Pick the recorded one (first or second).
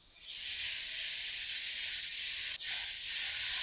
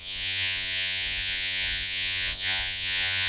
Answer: first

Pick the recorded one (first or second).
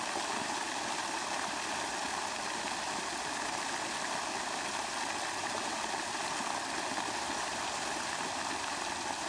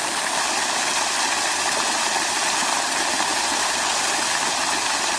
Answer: second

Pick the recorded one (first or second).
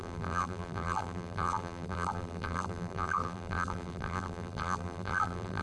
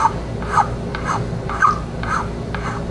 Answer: second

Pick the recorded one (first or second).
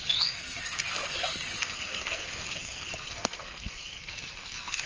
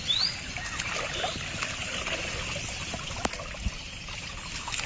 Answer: second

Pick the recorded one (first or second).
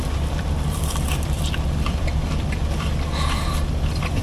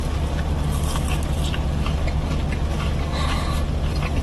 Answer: second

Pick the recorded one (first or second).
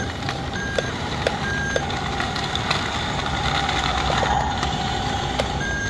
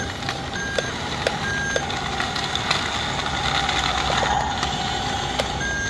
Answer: second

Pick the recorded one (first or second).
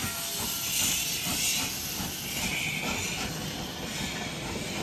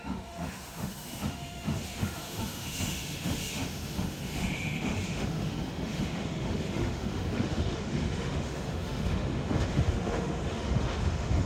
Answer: first